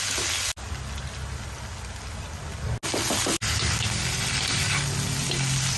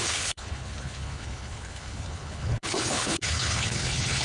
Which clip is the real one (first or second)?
first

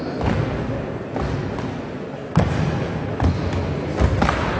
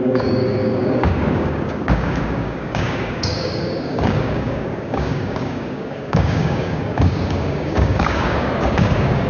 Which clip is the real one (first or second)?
first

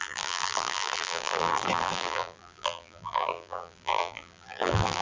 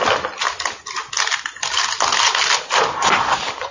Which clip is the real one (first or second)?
second